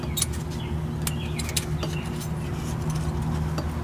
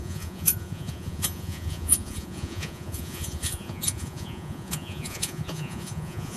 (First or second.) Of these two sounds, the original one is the first